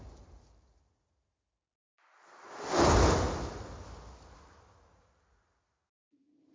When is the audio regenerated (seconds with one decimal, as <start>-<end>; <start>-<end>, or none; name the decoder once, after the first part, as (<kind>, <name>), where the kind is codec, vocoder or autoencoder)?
none